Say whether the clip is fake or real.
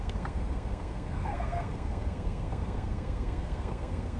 fake